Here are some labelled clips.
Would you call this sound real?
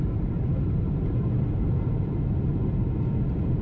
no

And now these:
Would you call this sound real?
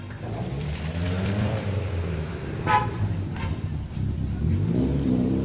no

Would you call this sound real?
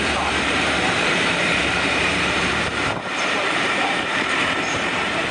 no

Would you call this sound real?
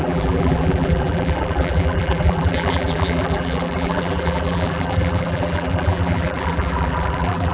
no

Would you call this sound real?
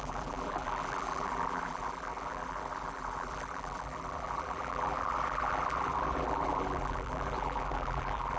no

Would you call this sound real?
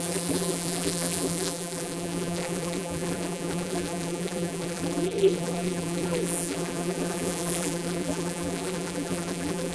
no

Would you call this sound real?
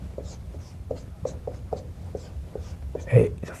yes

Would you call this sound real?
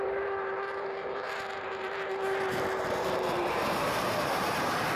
no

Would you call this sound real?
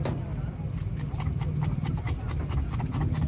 yes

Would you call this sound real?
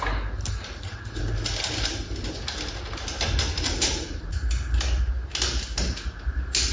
yes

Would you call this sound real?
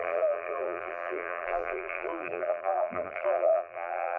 no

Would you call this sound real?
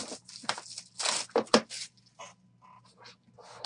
yes